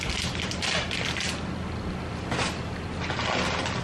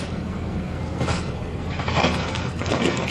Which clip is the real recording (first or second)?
first